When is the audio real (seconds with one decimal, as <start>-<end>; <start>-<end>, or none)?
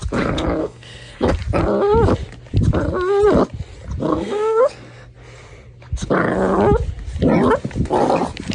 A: 0.0-0.6; 1.3-4.1; 4.7-8.5